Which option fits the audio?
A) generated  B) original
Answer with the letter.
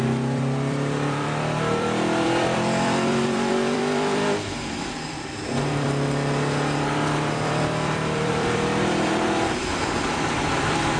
A